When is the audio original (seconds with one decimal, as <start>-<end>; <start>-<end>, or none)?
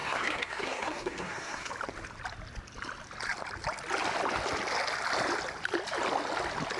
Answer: 1.7-6.8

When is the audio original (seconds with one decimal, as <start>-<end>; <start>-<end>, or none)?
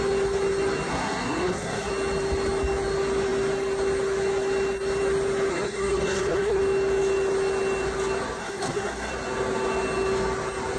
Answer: 0.0-0.9; 1.9-5.5; 6.6-8.4; 9.1-10.8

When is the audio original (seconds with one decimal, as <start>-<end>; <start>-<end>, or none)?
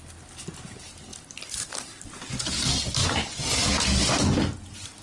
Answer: 0.0-3.0; 3.7-5.0